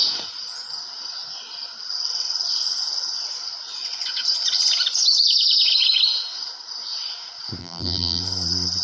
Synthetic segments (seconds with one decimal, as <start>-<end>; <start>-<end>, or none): 7.6-8.2